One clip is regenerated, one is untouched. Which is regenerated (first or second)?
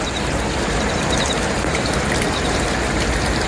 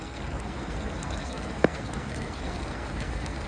second